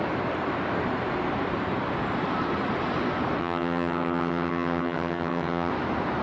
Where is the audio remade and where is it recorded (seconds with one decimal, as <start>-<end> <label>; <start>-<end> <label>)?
0.0-3.4 recorded; 3.4-5.7 remade; 5.7-6.2 recorded